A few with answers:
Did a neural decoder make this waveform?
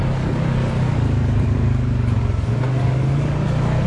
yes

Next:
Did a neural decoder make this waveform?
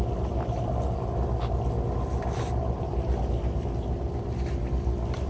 no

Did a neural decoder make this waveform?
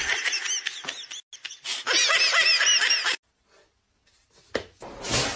no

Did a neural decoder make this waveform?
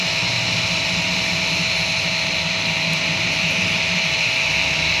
no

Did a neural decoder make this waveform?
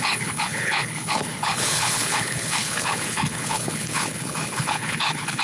yes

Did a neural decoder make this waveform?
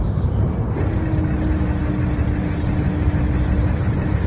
no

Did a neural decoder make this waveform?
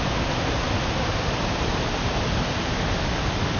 no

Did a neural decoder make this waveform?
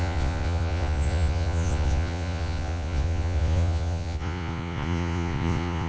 yes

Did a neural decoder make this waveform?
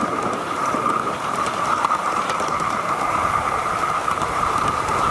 yes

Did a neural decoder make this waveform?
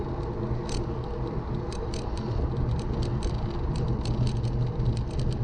no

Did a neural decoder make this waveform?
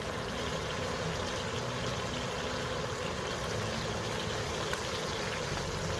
no